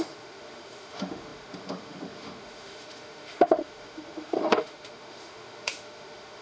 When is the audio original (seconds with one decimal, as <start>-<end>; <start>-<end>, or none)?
none